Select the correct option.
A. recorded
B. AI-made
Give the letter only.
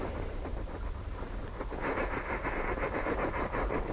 B